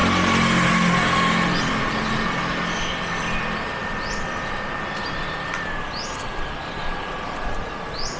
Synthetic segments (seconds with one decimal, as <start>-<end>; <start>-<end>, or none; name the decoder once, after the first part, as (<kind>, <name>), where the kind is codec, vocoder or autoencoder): none